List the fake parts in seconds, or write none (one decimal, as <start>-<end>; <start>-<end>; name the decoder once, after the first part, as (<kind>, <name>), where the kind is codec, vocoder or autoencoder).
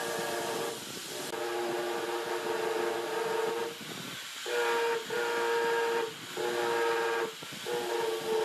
none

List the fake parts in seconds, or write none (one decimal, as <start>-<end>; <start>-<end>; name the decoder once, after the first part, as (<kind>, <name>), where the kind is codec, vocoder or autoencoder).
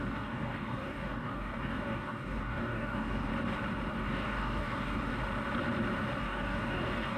0.0-3.3 (codec, DAC); 3.9-5.1; 6.2-7.2